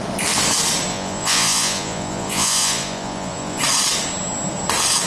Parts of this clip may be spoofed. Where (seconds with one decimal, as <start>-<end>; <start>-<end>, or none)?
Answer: 0.9-3.6